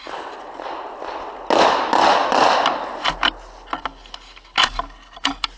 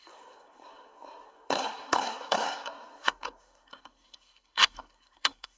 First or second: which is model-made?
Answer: second